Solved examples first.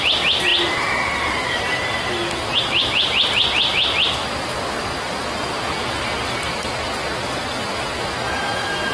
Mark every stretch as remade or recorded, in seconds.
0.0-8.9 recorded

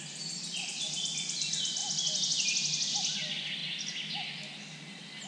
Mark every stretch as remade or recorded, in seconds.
0.0-5.3 recorded

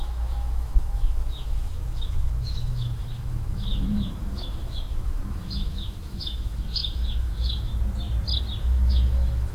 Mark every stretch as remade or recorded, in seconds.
0.0-7.7 remade; 7.7-8.6 recorded; 8.6-9.5 remade

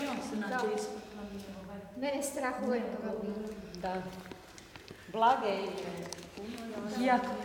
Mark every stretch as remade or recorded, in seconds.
0.0-2.1 remade; 2.1-5.9 recorded; 5.9-6.7 remade; 6.7-7.4 recorded

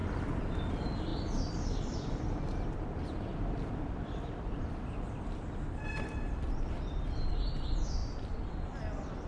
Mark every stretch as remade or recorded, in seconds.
0.0-9.3 recorded